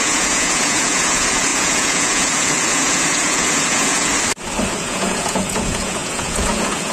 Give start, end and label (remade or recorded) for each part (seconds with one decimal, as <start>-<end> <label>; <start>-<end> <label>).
0.0-4.1 remade; 4.1-4.8 recorded; 4.8-6.9 remade